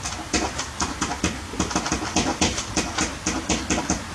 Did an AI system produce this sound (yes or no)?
no